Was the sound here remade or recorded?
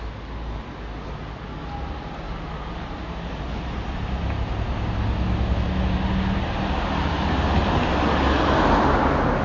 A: recorded